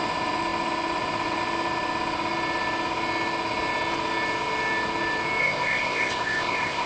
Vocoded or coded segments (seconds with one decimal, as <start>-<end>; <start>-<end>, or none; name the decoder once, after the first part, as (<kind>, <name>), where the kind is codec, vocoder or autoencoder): 5.4-6.9 (codec, ZipCodec)